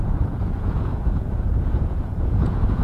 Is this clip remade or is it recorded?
remade